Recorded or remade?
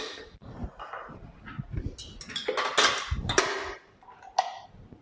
recorded